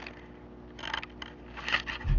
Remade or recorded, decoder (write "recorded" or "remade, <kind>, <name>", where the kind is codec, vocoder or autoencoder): recorded